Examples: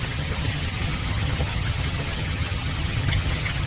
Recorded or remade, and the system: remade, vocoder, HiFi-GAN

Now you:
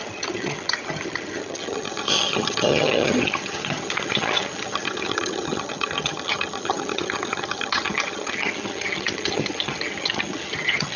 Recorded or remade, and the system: remade, vocoder, HiFi-GAN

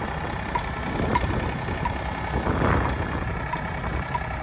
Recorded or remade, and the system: recorded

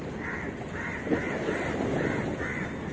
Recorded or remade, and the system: recorded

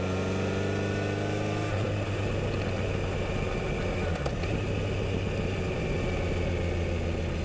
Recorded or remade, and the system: recorded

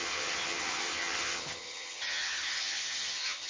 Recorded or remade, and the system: remade, vocoder, HiFi-GAN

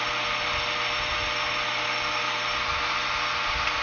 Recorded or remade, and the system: recorded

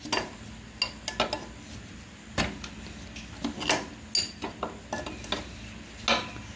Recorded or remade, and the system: recorded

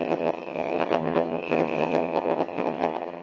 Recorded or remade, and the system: remade, vocoder, HiFi-GAN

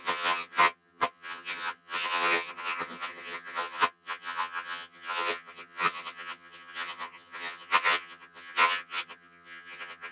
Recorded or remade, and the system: remade, vocoder, HiFi-GAN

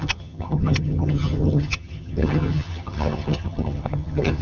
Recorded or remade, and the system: remade, vocoder, HiFi-GAN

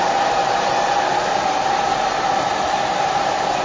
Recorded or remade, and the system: recorded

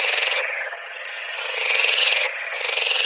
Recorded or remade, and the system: remade, vocoder, HiFi-GAN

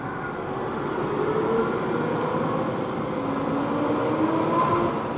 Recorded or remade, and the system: recorded